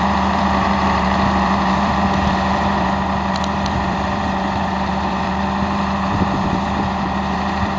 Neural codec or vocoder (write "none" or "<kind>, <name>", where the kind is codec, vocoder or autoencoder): vocoder, BigVGAN v2